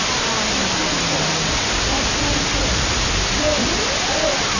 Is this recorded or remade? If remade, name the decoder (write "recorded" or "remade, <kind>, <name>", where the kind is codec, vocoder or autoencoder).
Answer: recorded